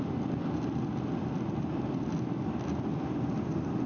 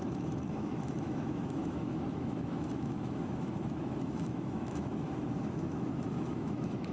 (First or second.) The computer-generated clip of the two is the second